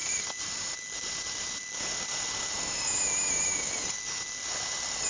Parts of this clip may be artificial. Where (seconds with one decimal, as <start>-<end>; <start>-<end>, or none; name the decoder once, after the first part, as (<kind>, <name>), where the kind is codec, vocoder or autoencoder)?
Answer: none